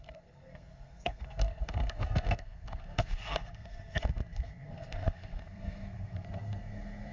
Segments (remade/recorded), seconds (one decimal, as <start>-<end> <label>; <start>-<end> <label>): 0.0-7.1 remade